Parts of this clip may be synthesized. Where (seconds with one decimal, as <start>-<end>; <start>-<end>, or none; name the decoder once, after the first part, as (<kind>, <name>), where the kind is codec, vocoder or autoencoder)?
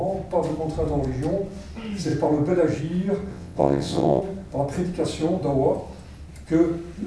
3.3-4.2 (vocoder, WaveNeXt)